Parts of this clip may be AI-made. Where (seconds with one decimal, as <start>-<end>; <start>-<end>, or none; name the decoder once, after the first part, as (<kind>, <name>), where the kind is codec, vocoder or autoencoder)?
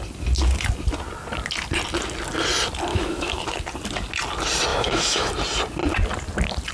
2.9-3.4 (autoencoder, DAC-VAE); 4.7-5.3